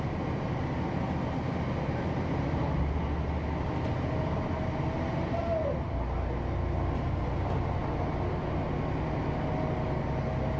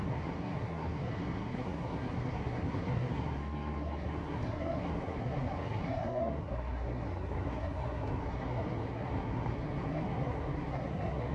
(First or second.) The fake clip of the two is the second